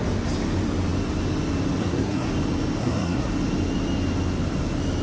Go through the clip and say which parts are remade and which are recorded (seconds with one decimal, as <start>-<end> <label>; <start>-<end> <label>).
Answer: 0.0-1.8 recorded; 1.8-2.3 remade; 2.3-2.8 recorded; 2.8-3.3 remade; 3.3-5.0 recorded